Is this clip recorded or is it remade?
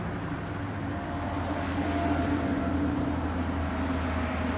recorded